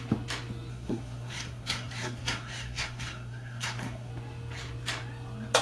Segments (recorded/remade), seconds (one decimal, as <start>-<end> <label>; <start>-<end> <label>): 0.0-0.7 recorded; 0.7-4.1 remade; 4.1-5.6 recorded